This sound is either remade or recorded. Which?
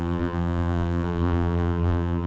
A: remade